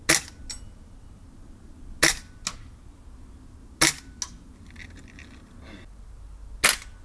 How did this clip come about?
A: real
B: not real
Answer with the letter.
A